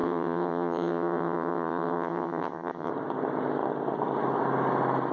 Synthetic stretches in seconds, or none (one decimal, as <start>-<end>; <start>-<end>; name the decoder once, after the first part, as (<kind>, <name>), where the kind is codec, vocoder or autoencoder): 0.0-2.9 (vocoder, HiFi-GAN)